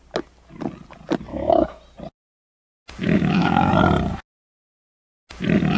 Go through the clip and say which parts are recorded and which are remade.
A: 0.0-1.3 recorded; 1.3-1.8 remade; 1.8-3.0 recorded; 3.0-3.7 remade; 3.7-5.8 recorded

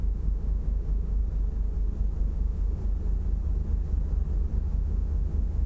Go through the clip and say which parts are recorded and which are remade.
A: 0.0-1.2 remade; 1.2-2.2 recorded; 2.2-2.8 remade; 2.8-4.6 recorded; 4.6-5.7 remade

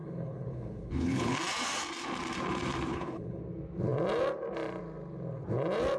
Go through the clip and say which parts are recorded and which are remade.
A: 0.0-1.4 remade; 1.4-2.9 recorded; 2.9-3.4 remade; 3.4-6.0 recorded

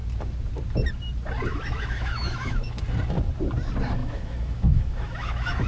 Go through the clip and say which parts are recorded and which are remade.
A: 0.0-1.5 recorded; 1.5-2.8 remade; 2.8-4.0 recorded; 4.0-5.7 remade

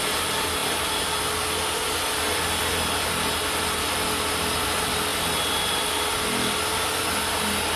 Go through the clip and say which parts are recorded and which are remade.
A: 0.0-7.8 recorded

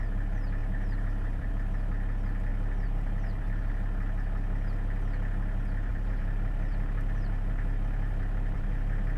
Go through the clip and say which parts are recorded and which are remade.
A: 0.0-0.6 recorded; 0.6-1.5 remade; 1.5-2.5 recorded; 2.5-3.7 remade; 3.7-5.9 recorded; 5.9-9.2 remade

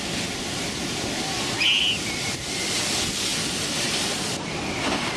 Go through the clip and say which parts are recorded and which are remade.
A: 0.0-5.2 recorded

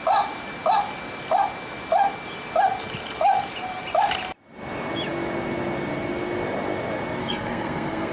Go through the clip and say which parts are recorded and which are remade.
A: 0.0-7.2 recorded; 7.2-8.1 remade